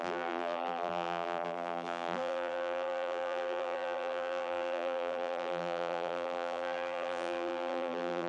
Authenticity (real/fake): fake